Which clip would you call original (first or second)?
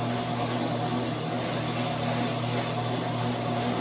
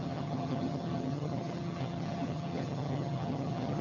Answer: first